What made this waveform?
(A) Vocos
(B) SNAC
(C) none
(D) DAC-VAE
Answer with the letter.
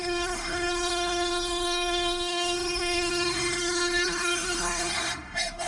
B